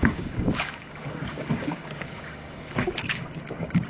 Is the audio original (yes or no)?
no